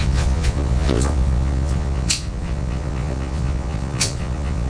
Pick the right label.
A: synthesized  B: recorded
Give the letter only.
A